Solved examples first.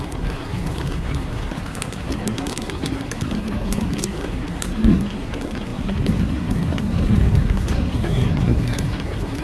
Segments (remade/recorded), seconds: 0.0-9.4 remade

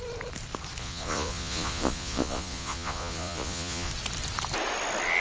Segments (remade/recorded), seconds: 0.0-0.8 recorded; 0.8-3.9 remade; 3.9-5.2 recorded

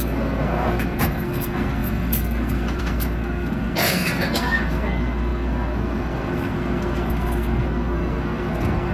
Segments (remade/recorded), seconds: 0.0-8.9 remade

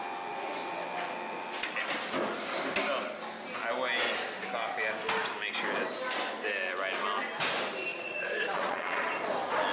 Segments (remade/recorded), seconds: 0.0-7.9 recorded; 7.9-9.1 remade; 9.1-9.7 recorded

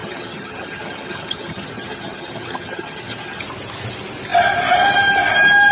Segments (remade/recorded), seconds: 0.0-3.4 remade; 3.4-5.7 recorded